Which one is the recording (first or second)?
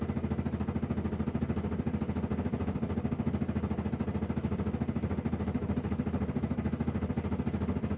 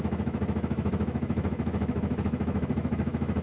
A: first